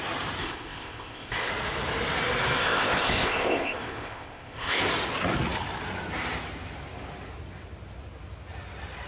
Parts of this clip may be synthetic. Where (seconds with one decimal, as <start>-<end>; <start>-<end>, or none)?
0.4-1.5; 2.6-4.8

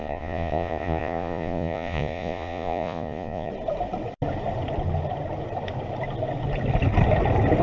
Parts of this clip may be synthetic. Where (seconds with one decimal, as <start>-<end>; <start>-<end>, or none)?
0.0-3.5

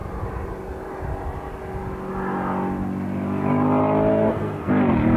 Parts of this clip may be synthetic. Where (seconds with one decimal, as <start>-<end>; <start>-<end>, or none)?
4.1-4.7

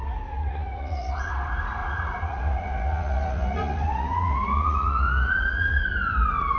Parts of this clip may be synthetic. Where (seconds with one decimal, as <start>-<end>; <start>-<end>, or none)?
0.4-1.3; 1.8-5.8

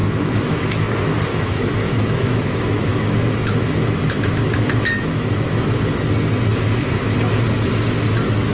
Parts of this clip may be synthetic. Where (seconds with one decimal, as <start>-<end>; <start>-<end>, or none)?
0.0-0.9; 1.3-5.8